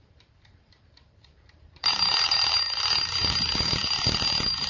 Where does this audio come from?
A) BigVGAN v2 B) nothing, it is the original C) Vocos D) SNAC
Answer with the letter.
A